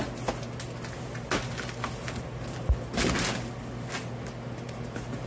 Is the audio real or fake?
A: real